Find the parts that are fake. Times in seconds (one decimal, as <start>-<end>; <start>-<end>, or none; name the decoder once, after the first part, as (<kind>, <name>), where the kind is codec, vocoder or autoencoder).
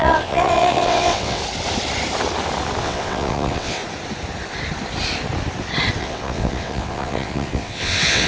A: 0.0-1.4 (vocoder, WaveNeXt); 2.8-3.8; 6.0-8.3